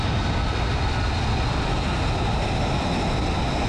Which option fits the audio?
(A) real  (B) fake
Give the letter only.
A